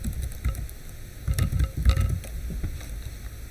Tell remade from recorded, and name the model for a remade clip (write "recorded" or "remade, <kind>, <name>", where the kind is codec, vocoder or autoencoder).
recorded